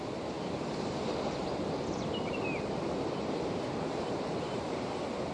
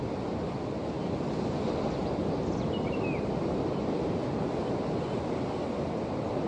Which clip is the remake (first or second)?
first